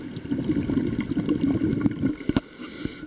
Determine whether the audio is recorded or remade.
recorded